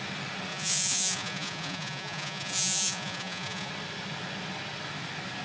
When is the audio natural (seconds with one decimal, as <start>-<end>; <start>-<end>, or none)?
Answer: 0.0-0.5; 3.7-5.4